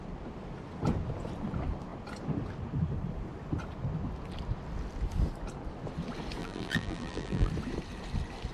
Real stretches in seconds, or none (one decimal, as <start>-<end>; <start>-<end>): 0.0-6.4; 7.5-8.5